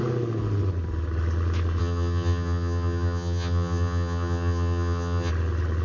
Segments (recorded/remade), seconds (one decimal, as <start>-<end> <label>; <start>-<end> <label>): 0.0-1.8 recorded; 1.8-5.3 remade; 5.3-5.8 recorded